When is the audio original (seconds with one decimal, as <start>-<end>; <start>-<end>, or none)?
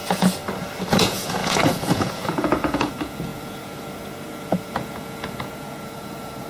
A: 0.4-0.9